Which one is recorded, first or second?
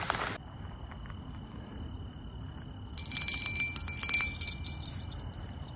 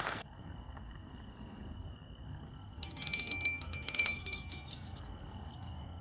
first